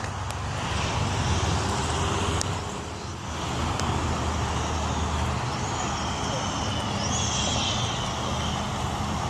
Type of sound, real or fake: real